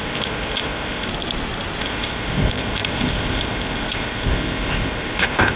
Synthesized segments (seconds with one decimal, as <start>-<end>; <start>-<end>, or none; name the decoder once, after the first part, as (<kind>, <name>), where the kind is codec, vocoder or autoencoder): 0.0-1.1 (codec, ZipCodec); 1.8-5.6